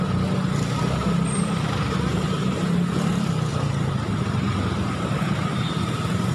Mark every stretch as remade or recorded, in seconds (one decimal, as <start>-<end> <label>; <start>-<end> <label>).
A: 0.0-1.0 recorded; 1.0-1.7 remade; 1.7-2.1 recorded; 2.1-3.1 remade; 3.1-3.5 recorded; 3.5-6.3 remade